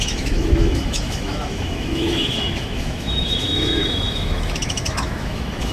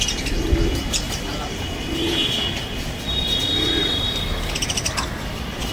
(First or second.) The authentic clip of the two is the second